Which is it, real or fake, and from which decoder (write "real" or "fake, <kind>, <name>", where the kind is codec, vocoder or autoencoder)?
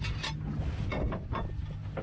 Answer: real